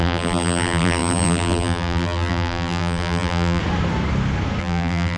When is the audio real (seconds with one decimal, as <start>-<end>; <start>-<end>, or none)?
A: 3.6-4.6

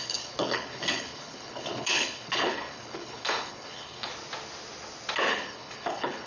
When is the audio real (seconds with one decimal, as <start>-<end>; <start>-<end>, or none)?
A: 4.1-5.3

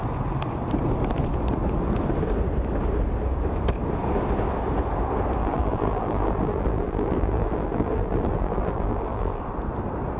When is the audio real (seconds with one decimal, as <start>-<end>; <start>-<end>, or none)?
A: 0.0-5.4; 9.4-10.2

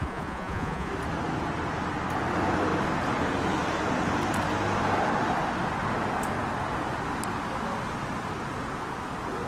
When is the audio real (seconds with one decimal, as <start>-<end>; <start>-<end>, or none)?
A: 0.9-9.5